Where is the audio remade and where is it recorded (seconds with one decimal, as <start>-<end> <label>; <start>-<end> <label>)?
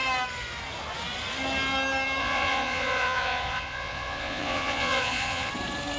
0.0-2.2 recorded; 2.2-5.5 remade; 5.5-6.0 recorded